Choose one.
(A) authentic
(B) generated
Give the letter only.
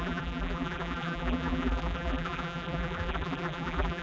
B